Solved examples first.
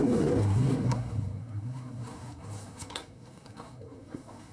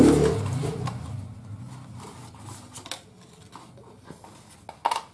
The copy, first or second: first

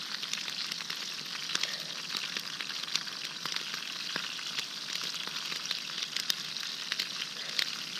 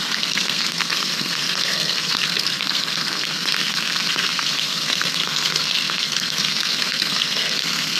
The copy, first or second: second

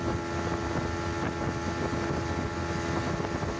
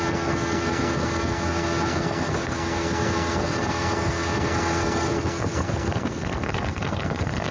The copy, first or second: second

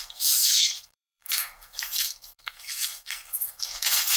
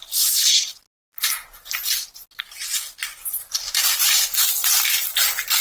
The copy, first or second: first